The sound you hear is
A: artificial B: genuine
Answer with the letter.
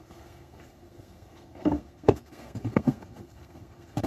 A